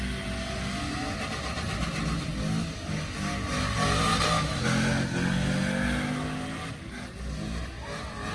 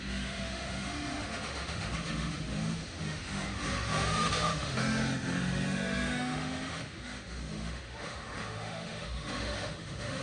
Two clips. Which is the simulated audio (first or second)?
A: second